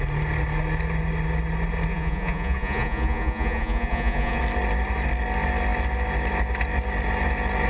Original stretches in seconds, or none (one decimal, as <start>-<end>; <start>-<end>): 0.0-1.9; 4.4-7.7